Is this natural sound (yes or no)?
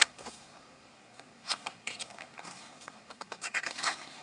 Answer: no